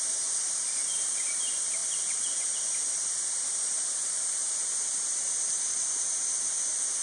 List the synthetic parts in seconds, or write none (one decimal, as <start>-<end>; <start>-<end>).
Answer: 0.0-6.2